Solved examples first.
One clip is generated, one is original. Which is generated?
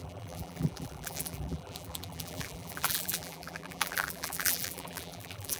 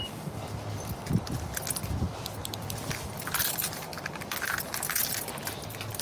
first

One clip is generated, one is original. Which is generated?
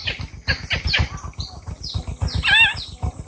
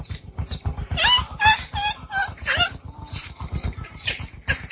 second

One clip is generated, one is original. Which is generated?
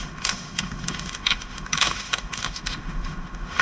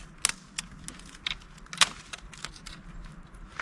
first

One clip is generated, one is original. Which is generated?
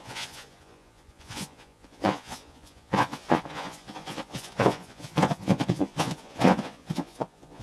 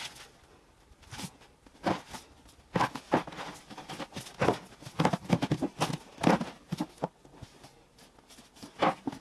first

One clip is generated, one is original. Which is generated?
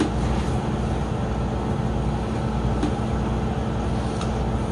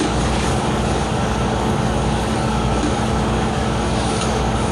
second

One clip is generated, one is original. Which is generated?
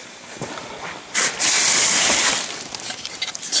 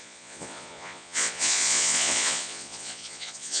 second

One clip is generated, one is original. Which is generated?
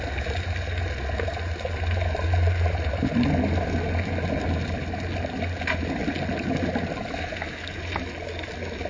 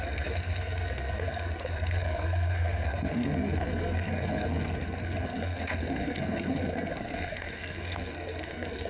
second